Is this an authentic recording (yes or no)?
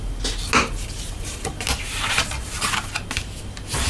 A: yes